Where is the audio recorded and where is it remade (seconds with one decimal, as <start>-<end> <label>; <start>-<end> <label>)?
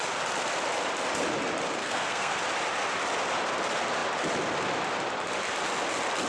0.0-1.8 recorded; 1.8-2.4 remade; 2.4-6.3 recorded